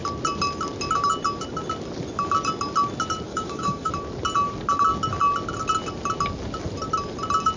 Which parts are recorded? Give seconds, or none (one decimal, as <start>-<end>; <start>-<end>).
0.0-3.3; 3.9-7.6